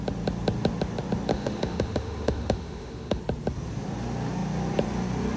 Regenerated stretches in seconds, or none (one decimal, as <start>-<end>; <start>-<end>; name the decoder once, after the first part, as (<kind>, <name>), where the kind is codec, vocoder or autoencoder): 1.3-3.2 (autoencoder, DAC-VAE)